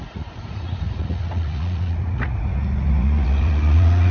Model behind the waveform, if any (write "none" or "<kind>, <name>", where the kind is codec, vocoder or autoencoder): vocoder, Vocos